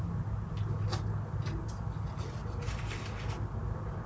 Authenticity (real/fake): real